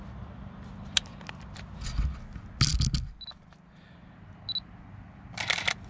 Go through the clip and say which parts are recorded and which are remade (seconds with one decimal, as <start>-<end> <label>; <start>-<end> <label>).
0.0-5.9 recorded